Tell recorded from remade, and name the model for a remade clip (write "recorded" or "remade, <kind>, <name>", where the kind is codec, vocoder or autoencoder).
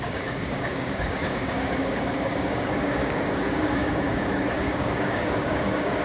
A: remade, codec, DAC